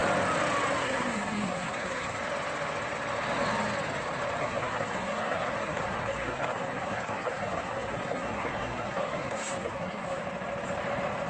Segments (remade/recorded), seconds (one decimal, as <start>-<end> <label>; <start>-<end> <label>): 0.0-0.8 recorded; 0.8-2.2 remade; 2.2-4.4 recorded; 4.4-10.2 remade; 10.2-11.3 recorded

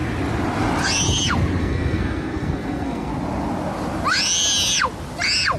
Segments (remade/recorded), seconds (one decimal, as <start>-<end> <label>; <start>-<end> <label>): 0.0-1.6 recorded; 1.6-3.1 remade; 3.1-5.6 recorded